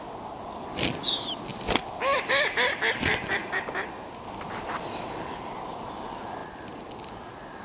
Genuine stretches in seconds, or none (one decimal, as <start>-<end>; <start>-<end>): 0.0-7.6